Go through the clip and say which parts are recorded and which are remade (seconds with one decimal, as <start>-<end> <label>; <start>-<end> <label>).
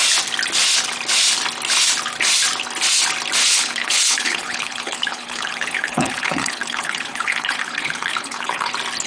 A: 0.0-3.4 recorded; 3.4-8.7 remade; 8.7-9.1 recorded